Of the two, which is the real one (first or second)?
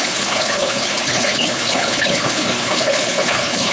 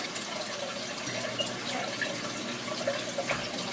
second